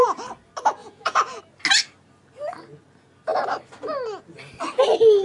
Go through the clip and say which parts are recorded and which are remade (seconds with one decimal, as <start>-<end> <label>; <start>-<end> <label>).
0.0-0.8 recorded; 0.8-1.4 remade; 1.4-5.2 recorded